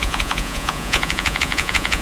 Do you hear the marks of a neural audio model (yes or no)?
yes